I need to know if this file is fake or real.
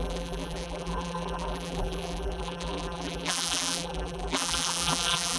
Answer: fake